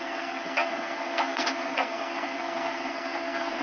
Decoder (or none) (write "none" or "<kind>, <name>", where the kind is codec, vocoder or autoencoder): codec, SNAC